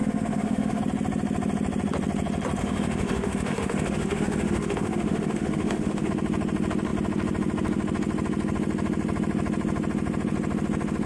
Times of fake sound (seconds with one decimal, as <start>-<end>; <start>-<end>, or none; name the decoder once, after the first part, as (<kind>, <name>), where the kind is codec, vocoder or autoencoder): 0.0-0.8 (autoencoder, DAC-VAE); 2.6-6.1